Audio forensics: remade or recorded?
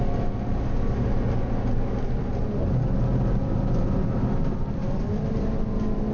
recorded